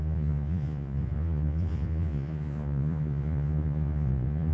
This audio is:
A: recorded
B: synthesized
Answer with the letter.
B